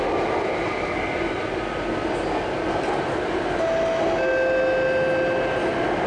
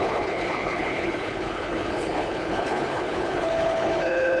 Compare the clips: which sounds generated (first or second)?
second